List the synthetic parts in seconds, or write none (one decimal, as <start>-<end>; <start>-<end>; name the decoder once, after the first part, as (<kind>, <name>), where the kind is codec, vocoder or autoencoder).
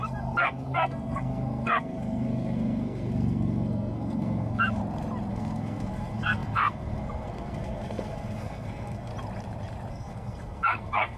0.0-4.8 (codec, SNAC); 5.3-9.1; 9.9-11.2